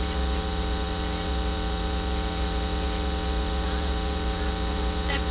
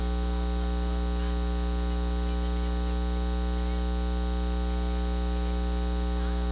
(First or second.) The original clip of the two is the second